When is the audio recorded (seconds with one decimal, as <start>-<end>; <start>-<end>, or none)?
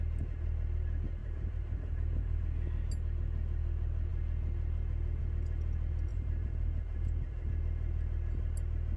0.0-1.2; 2.4-6.1; 7.5-9.0